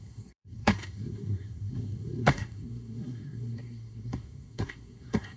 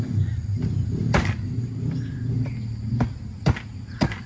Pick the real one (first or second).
second